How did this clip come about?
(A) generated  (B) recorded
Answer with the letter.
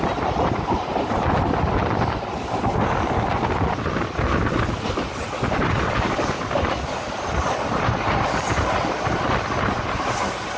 B